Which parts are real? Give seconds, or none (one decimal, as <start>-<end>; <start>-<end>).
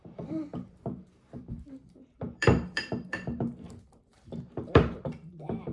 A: none